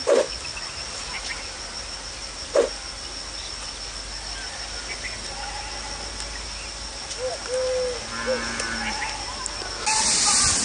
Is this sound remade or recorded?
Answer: recorded